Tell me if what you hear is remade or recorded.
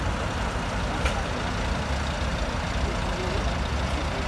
recorded